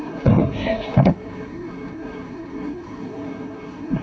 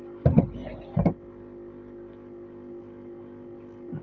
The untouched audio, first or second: second